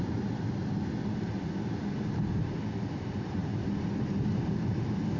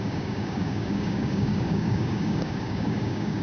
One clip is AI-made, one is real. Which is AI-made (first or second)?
second